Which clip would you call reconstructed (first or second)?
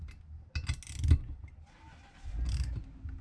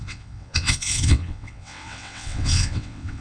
second